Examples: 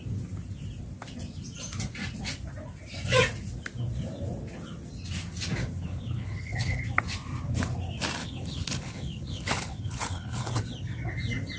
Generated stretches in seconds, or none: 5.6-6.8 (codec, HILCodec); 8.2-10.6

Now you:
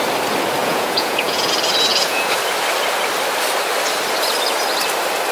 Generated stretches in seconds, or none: 0.6-1.5 (vocoder, Vocos); 1.9-2.4

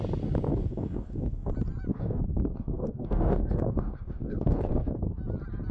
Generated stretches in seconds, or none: 0.5-1.5 (codec, DAC); 1.9-5.0

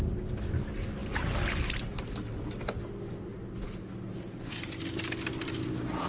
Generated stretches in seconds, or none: none

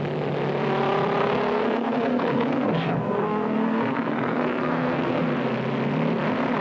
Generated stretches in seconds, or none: 1.2-5.2 (codec, SNAC)

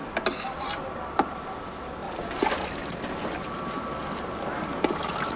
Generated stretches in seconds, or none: 2.1-2.8 (vocoder, BigVGAN v2)